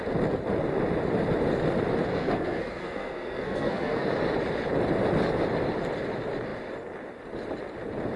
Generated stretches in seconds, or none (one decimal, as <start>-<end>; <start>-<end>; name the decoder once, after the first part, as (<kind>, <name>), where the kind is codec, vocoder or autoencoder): 2.1-4.1 (codec, SNAC)